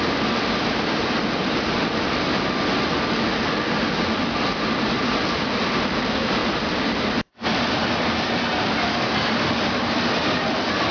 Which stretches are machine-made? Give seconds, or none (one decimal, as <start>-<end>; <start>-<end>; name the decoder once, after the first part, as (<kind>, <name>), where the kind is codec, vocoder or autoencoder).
none